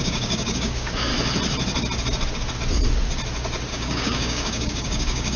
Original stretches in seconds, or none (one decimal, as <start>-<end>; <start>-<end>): 1.1-3.7